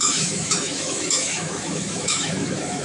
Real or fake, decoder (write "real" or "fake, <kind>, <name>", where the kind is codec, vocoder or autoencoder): fake, autoencoder, DAC-VAE